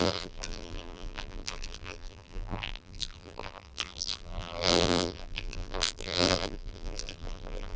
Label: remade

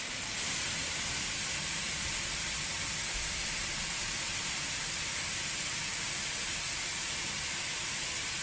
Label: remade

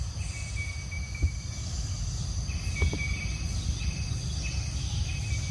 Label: recorded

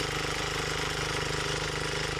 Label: recorded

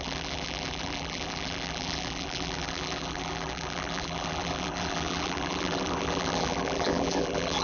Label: remade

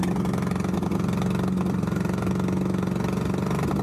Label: recorded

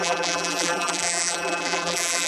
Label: remade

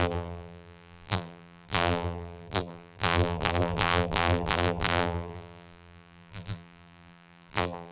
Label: remade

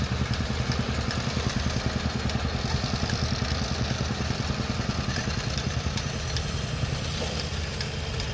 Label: recorded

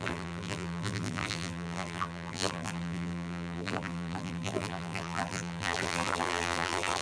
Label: remade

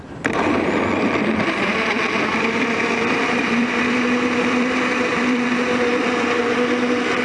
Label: remade